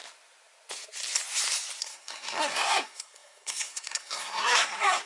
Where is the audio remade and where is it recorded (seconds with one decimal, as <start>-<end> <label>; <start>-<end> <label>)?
0.0-1.8 recorded; 1.8-5.1 remade